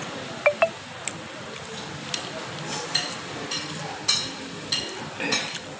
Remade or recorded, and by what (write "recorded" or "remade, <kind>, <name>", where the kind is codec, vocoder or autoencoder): recorded